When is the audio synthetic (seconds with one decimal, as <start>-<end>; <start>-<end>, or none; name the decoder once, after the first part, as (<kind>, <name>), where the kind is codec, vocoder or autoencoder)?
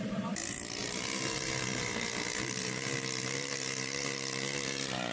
0.0-5.1 (vocoder, BigVGAN v2)